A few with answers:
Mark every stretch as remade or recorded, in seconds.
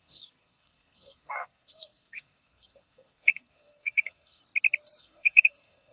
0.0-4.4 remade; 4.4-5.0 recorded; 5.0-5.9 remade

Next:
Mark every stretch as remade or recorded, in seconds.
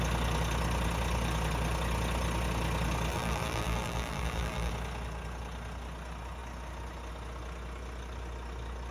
0.0-3.1 recorded; 3.1-4.7 remade; 4.7-8.9 recorded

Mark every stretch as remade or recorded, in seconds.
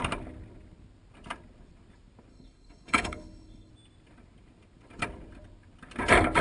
0.0-2.3 recorded; 2.3-3.7 remade; 3.7-6.4 recorded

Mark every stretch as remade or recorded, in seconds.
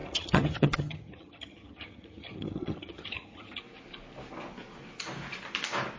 0.0-3.6 remade; 3.6-6.0 recorded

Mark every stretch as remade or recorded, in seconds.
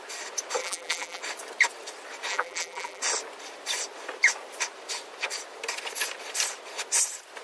0.0-0.6 recorded; 0.6-1.2 remade; 1.2-2.3 recorded; 2.3-3.0 remade; 3.0-7.4 recorded